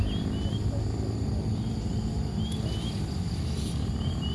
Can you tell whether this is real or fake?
real